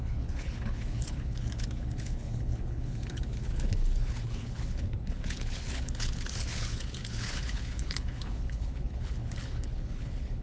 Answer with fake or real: fake